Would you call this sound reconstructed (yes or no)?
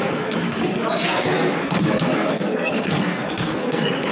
yes